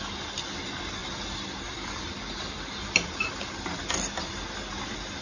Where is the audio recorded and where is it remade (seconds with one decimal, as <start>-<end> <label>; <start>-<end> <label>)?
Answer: 0.0-1.0 recorded; 1.0-2.8 remade; 2.8-5.2 recorded